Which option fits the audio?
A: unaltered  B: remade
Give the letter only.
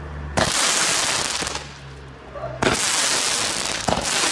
A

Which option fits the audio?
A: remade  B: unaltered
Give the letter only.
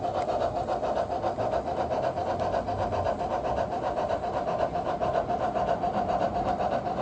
B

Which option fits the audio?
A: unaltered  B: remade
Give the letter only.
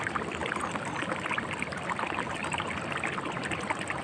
A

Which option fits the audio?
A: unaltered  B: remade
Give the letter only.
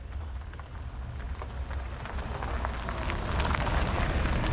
A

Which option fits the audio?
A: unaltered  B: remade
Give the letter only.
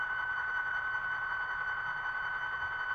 B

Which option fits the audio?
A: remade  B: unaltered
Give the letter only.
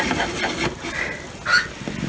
B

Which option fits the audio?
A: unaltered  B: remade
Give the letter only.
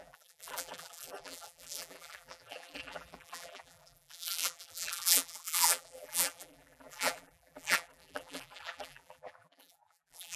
B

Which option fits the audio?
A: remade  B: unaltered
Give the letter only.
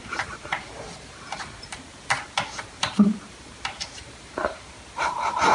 A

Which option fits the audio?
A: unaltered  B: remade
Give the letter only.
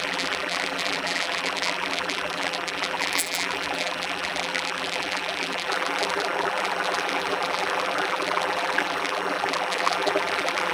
B